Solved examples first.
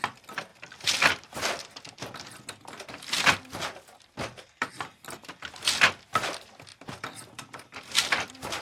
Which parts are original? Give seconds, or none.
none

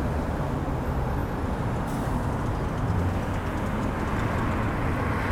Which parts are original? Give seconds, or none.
0.0-5.3